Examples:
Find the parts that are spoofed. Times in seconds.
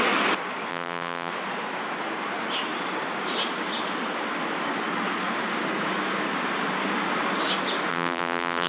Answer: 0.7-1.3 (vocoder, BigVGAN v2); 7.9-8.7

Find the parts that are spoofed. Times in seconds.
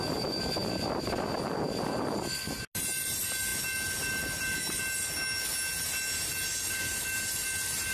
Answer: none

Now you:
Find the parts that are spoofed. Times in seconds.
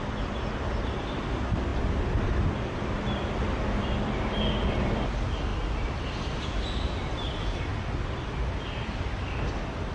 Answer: 5.5-6.5 (vocoder, BigVGAN v2)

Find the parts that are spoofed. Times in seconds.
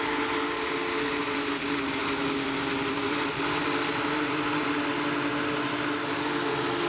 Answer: 2.0-4.7 (vocoder, BigVGAN v2)